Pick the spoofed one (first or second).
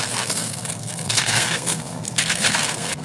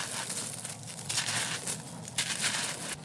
first